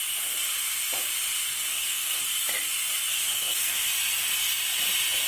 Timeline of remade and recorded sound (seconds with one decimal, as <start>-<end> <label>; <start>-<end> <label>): 0.0-1.7 recorded; 1.7-2.2 remade; 2.2-3.1 recorded; 3.1-3.9 remade; 3.9-5.3 recorded